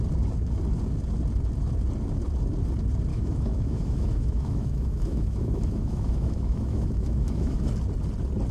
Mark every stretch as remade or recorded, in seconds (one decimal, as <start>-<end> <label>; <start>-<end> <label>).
0.0-3.1 recorded; 3.1-7.7 remade; 7.7-8.5 recorded